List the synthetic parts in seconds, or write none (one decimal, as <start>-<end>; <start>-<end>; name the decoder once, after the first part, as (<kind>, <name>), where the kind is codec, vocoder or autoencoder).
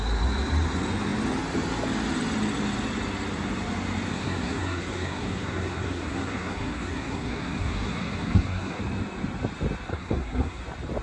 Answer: 4.1-8.8 (codec, SNAC); 9.9-10.6